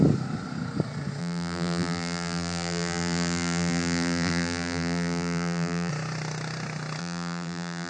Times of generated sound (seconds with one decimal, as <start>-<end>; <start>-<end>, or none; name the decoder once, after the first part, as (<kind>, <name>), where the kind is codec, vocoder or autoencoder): 1.2-5.9 (vocoder, BigVGAN v2); 7.0-7.9